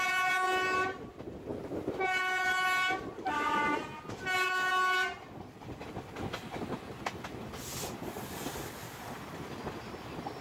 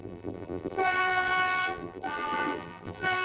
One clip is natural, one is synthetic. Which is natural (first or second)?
first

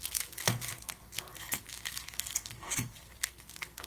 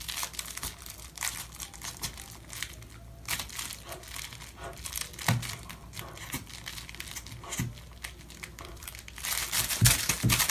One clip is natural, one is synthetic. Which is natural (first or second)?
second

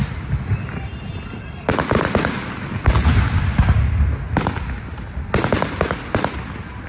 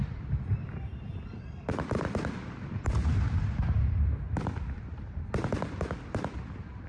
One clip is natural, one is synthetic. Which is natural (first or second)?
first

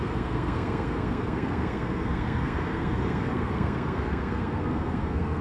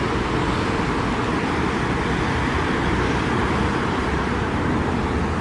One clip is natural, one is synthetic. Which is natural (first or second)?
second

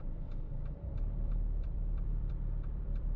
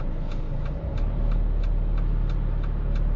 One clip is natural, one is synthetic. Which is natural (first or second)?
second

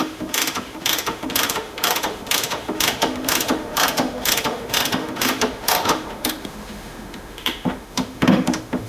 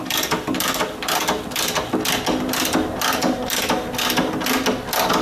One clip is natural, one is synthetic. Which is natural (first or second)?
second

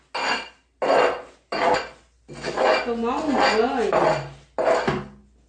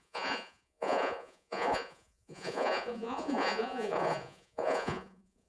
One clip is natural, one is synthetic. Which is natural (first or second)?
first